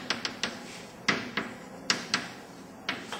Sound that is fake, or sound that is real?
real